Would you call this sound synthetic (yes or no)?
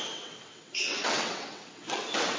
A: yes